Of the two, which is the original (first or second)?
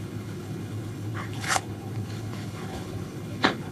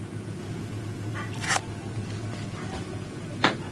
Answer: second